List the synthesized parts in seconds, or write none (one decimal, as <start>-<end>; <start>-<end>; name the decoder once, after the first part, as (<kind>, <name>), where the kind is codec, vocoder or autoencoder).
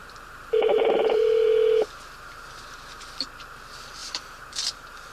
0.0-1.5 (vocoder, BigVGAN v2); 4.0-5.1